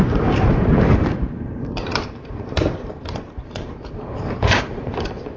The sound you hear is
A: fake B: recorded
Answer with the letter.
A